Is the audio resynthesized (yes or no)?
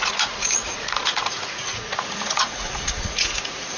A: yes